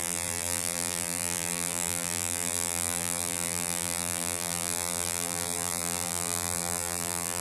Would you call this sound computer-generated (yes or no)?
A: yes